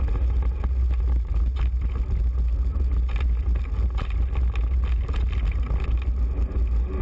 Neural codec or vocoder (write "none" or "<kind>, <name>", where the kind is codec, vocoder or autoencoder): none